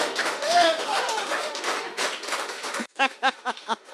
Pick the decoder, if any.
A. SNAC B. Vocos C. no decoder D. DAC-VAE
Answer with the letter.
D